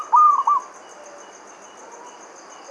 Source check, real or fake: real